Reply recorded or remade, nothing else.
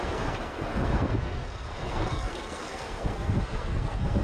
remade